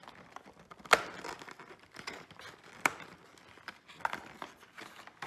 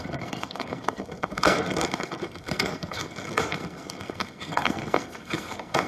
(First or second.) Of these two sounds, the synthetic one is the second